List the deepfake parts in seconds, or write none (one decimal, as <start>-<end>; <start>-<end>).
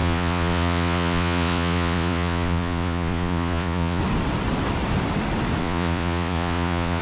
0.0-4.0; 5.6-7.0